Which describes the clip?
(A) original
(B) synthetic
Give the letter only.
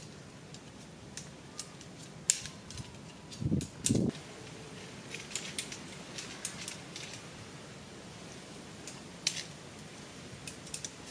A